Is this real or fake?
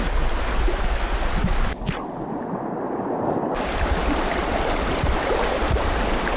real